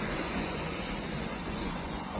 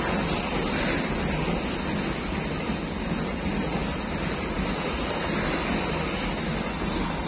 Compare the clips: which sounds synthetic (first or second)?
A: first